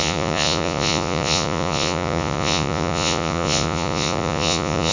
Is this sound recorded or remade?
remade